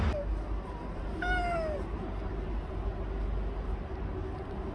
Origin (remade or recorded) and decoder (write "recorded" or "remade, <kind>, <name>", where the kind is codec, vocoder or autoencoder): recorded